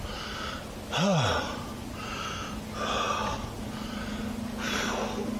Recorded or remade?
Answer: recorded